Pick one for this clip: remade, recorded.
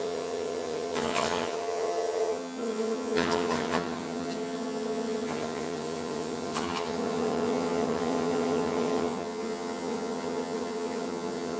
remade